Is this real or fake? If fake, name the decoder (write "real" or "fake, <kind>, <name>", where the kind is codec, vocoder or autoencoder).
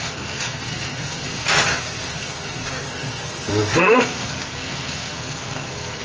fake, codec, SNAC